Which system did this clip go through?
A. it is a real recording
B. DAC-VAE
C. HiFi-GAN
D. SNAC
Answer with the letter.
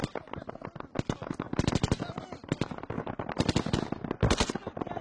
A